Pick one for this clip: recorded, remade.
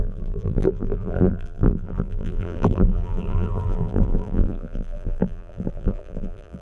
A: remade